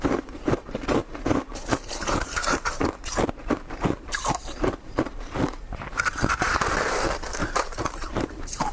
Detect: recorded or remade remade